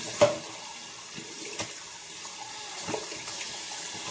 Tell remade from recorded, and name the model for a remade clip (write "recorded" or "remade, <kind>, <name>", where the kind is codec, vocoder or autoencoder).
recorded